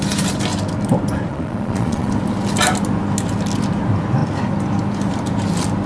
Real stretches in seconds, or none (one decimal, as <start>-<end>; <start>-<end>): 0.0-1.3; 2.1-5.9